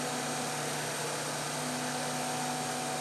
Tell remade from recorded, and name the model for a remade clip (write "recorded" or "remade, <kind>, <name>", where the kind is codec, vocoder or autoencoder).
recorded